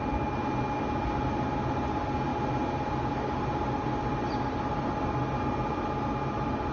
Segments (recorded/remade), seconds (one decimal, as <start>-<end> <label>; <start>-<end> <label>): 0.0-6.7 recorded

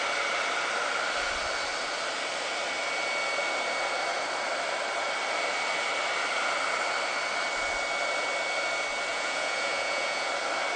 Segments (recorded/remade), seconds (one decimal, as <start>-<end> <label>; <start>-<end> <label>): 0.0-9.1 recorded; 9.1-10.3 remade; 10.3-10.8 recorded

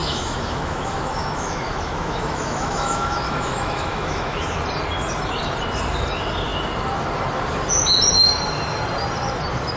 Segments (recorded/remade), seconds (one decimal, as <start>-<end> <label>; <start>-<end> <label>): 0.0-4.6 remade; 4.6-9.8 recorded